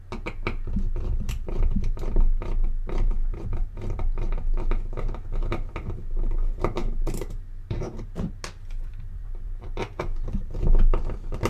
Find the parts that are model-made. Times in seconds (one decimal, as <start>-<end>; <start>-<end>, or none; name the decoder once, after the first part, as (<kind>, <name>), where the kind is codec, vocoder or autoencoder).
8.9-10.6 (vocoder, BigVGAN v2)